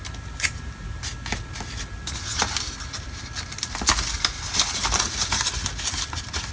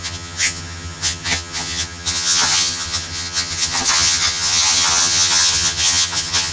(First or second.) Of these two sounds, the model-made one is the second